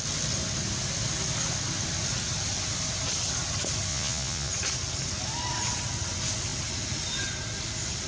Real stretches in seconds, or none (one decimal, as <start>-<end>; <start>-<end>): 0.0-3.9; 4.5-8.1